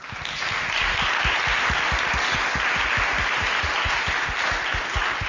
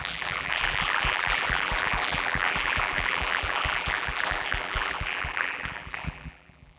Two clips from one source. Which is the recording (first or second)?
first